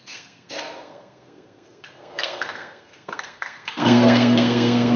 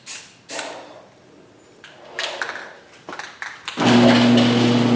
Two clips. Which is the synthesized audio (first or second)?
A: first